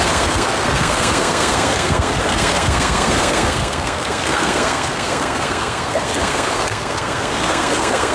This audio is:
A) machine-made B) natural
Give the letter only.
A